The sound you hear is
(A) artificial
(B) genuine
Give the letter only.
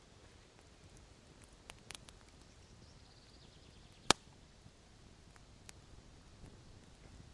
B